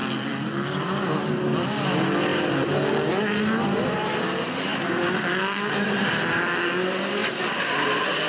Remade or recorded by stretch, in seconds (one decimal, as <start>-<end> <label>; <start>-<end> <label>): 0.0-1.3 remade; 1.3-4.7 recorded; 4.7-5.4 remade; 5.4-8.3 recorded